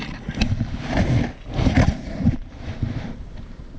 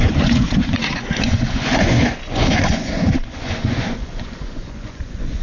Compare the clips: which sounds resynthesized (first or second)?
second